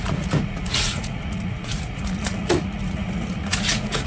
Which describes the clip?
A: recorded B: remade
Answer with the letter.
B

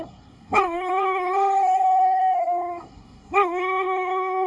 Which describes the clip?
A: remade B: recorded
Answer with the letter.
A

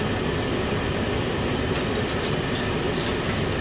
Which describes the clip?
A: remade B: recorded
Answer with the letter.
B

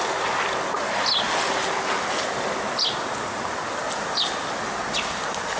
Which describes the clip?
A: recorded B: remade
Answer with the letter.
A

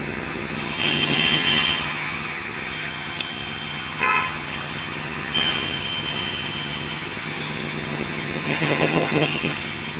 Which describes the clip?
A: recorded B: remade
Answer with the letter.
B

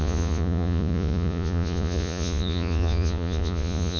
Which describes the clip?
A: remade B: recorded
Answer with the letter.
A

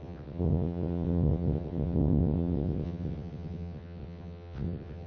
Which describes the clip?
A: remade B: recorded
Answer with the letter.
A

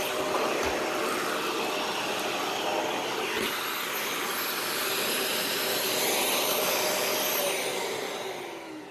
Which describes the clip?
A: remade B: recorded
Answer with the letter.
B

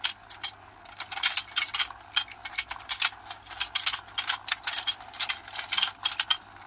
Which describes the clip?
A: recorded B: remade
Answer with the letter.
A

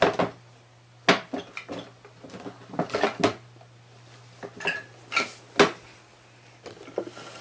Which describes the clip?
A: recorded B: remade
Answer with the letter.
A